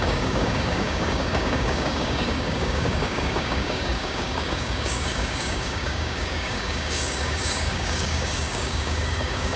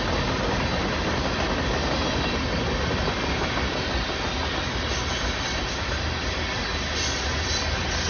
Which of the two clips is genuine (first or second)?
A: second